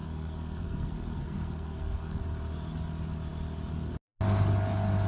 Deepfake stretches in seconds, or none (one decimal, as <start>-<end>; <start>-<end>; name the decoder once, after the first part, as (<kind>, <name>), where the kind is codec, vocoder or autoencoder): 0.0-2.2 (codec, SNAC)